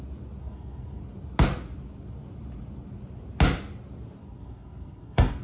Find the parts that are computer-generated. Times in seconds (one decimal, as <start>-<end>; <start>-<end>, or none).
0.4-1.0; 4.2-5.4